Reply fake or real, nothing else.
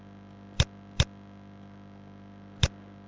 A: real